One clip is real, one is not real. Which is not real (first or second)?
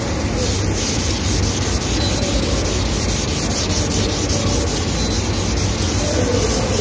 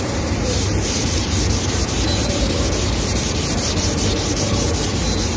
second